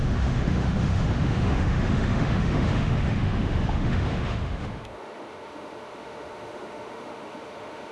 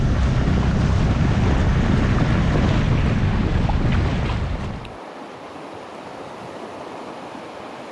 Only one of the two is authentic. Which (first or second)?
second